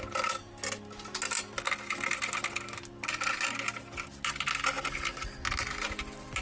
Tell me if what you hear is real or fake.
real